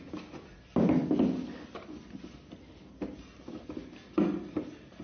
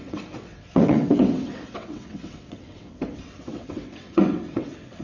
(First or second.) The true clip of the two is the first